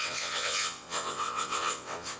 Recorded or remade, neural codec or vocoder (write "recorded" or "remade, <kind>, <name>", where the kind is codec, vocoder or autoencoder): remade, vocoder, WaveNeXt